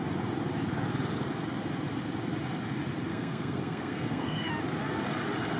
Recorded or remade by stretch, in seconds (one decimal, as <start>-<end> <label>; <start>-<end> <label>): 0.0-3.1 recorded; 3.1-4.5 remade; 4.5-5.6 recorded